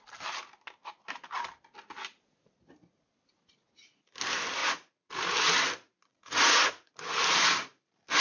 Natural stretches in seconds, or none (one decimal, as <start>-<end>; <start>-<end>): 0.0-4.6; 5.1-6.1; 6.9-8.2